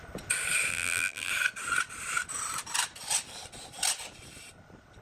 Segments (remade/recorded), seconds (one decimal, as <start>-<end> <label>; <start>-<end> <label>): 0.0-0.7 recorded; 0.7-1.3 remade; 1.3-5.0 recorded